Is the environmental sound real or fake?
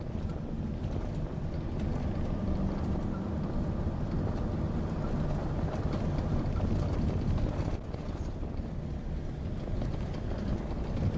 real